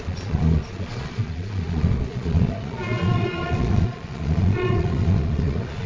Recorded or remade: remade